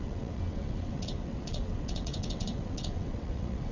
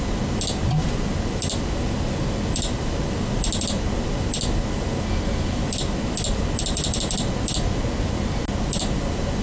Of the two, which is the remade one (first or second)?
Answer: first